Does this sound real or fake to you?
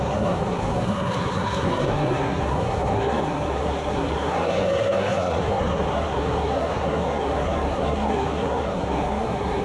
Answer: fake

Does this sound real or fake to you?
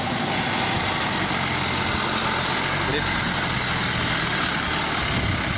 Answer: real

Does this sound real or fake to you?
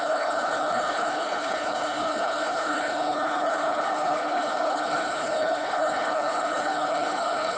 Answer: fake